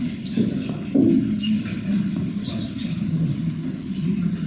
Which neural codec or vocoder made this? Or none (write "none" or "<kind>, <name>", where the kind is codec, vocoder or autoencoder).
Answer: none